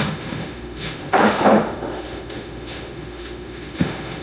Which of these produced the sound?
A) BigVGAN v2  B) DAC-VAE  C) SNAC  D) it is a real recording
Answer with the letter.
B